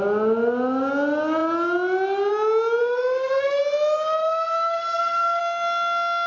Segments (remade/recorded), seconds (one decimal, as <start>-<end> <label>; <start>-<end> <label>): 0.0-2.8 recorded; 2.8-3.6 remade; 3.6-4.2 recorded; 4.2-5.4 remade; 5.4-6.3 recorded